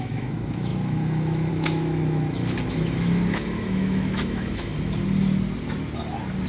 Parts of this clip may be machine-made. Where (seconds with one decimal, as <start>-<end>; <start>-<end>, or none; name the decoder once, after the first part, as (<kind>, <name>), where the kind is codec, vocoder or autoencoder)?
0.0-4.7 (autoencoder, DAC-VAE)